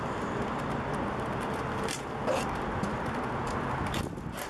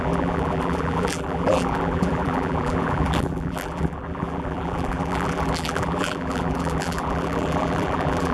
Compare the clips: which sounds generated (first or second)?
second